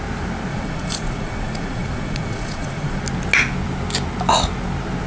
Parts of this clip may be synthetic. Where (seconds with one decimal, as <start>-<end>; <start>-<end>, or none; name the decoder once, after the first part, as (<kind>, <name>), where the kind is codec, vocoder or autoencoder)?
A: 0.5-3.0 (vocoder, Vocos)